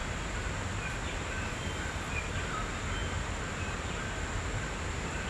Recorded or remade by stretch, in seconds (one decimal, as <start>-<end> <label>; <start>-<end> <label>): 0.0-0.6 remade; 0.6-5.3 recorded